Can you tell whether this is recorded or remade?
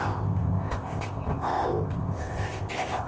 remade